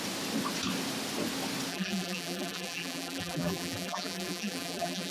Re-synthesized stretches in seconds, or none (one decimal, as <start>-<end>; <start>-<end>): 1.7-5.1